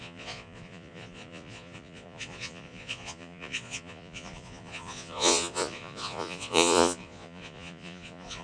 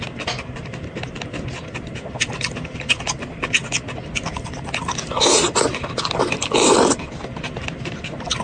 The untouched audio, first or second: second